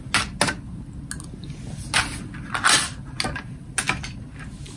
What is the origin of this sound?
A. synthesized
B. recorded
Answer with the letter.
B